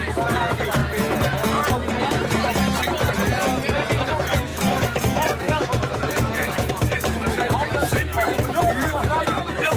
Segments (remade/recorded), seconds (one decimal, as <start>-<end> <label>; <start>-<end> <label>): 0.0-0.8 remade; 0.8-4.1 recorded; 4.1-9.8 remade